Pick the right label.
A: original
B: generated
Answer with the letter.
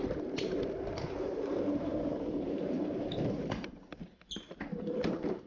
B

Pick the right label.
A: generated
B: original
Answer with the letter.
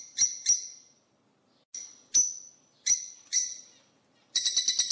B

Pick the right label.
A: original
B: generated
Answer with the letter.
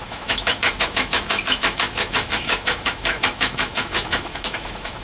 B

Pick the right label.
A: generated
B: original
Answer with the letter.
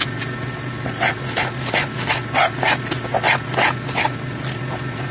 B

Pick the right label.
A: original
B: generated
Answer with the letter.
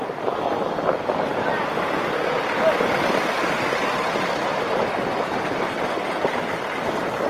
A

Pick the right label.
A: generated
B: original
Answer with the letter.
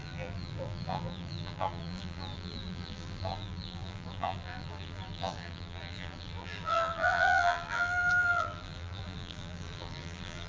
A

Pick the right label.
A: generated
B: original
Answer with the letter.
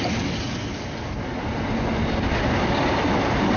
B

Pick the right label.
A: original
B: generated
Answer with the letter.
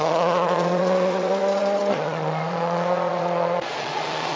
B